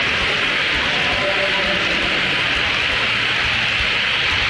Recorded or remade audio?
recorded